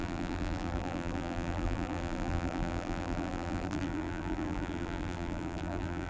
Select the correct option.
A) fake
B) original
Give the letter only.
A